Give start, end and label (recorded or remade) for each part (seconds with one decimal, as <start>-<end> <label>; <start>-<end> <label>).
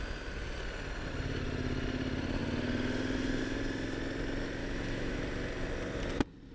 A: 0.0-4.6 recorded; 4.6-5.2 remade; 5.2-6.5 recorded